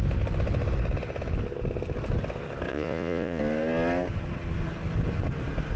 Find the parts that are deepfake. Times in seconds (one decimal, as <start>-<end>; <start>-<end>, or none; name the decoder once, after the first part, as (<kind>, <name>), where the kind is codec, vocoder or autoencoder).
2.7-3.4 (vocoder, Vocos)